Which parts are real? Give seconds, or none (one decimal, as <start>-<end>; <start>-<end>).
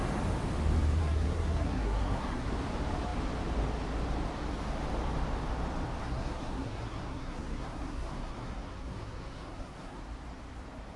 0.0-1.0; 2.5-6.0; 10.0-11.0